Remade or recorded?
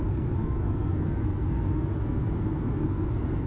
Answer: remade